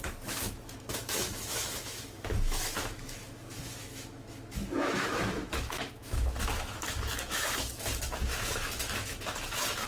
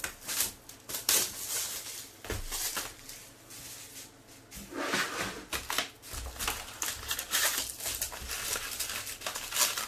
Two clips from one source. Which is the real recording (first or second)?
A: second